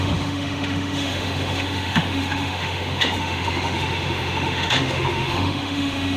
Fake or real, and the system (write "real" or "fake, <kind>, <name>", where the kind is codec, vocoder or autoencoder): fake, autoencoder, DAC-VAE